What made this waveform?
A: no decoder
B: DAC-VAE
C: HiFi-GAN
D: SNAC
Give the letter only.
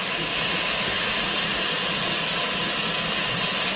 A